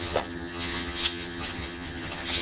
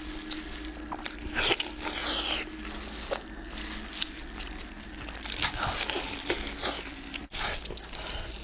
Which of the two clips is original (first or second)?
second